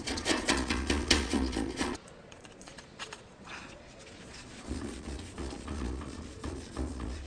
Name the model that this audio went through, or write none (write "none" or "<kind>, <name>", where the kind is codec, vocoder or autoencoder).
vocoder, Vocos